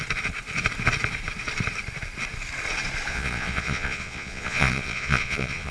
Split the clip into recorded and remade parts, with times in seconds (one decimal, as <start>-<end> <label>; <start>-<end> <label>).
0.0-3.1 recorded; 3.1-5.7 remade

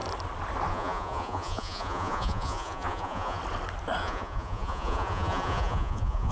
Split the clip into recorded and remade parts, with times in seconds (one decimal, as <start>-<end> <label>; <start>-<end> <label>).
0.0-0.7 recorded; 0.7-3.4 remade; 3.4-4.0 recorded; 4.0-6.3 remade

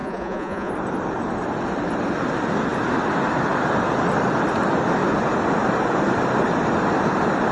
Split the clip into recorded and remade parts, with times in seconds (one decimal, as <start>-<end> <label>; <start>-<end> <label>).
0.0-0.7 remade; 0.7-7.5 recorded

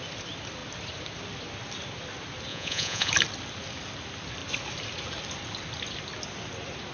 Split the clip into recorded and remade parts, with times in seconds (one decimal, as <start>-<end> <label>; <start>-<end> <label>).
0.0-2.5 recorded; 2.5-3.1 remade; 3.1-6.9 recorded

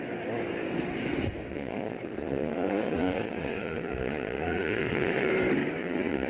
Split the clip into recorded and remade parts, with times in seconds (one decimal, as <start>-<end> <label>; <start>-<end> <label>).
0.0-1.5 recorded; 1.5-5.3 remade; 5.3-5.8 recorded; 5.8-6.3 remade

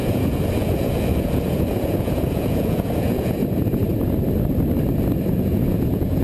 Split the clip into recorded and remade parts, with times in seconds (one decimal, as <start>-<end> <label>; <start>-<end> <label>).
0.0-3.8 remade; 3.8-5.3 recorded; 5.3-6.2 remade

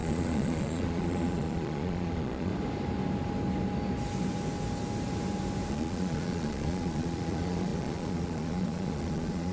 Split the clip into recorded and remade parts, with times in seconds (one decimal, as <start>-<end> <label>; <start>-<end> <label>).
0.0-2.5 remade; 2.5-5.7 recorded; 5.7-9.5 remade

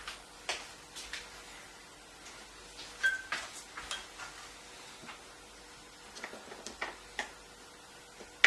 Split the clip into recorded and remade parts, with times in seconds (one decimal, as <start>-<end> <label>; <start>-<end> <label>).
0.0-8.5 recorded